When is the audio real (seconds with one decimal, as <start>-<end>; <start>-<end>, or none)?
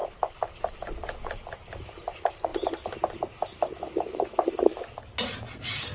2.5-3.9